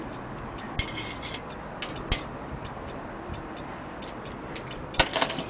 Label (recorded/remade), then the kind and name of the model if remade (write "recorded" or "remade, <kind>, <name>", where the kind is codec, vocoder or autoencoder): recorded